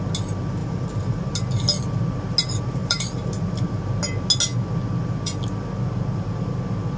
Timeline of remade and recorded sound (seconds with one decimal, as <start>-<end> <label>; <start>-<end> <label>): 0.0-0.6 recorded; 0.6-1.3 remade; 1.3-2.8 recorded; 2.8-3.4 remade; 3.4-7.0 recorded

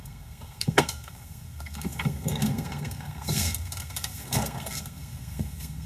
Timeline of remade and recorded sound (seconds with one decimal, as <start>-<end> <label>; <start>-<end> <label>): 0.0-5.9 remade

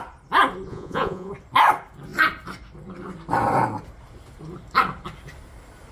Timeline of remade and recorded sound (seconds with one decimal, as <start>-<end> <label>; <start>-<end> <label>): 0.0-0.7 recorded; 0.7-1.3 remade; 1.3-5.9 recorded

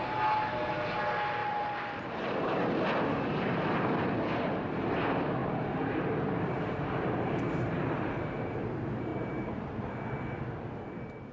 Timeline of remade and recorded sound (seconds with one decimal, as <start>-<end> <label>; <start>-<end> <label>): 0.0-1.4 recorded; 1.4-2.7 remade; 2.7-5.4 recorded; 5.4-7.9 remade; 7.9-9.1 recorded; 9.1-9.7 remade; 9.7-11.3 recorded